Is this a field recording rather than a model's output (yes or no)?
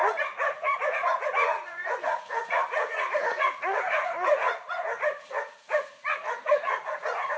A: no